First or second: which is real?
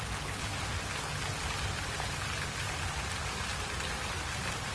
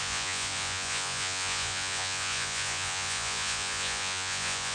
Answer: first